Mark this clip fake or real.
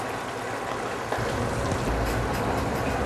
real